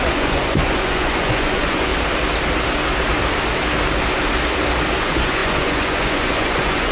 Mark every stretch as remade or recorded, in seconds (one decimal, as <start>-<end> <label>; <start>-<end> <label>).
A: 0.0-1.9 remade; 1.9-5.0 recorded; 5.0-6.9 remade